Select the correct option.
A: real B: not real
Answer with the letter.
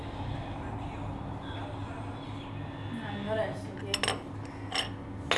A